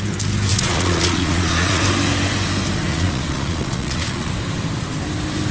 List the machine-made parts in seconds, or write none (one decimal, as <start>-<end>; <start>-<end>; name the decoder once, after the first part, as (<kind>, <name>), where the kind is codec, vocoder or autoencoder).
0.5-1.8 (vocoder, Vocos); 2.9-4.3